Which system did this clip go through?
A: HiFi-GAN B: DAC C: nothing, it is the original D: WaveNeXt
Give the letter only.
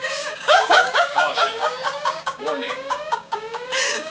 B